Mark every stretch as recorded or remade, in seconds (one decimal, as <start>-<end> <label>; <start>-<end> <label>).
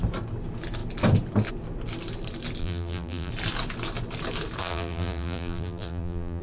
0.0-2.6 recorded; 2.6-3.3 remade; 3.3-4.6 recorded; 4.6-6.4 remade